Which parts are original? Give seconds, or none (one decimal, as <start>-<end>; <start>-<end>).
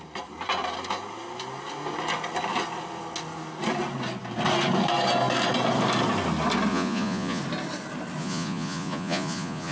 0.0-6.7; 7.4-8.2